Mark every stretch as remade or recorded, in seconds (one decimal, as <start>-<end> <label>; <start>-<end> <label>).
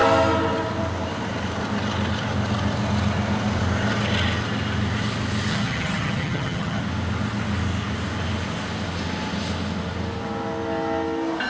0.0-5.5 recorded; 5.5-6.8 remade; 6.8-11.5 recorded